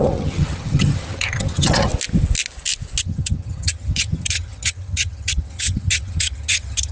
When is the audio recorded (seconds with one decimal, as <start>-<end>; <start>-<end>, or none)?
1.9-3.0